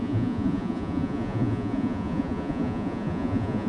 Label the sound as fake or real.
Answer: fake